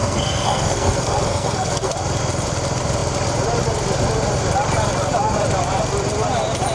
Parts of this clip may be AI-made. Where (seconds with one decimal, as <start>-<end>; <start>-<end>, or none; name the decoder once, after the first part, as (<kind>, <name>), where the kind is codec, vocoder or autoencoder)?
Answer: 0.0-1.9 (codec, SNAC)